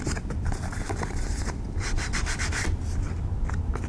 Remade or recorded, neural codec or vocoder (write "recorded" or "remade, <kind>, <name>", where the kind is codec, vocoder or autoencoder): recorded